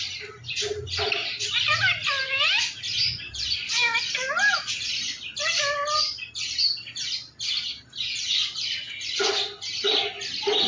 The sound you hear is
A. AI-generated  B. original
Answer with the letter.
B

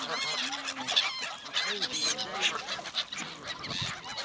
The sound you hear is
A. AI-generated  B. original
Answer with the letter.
B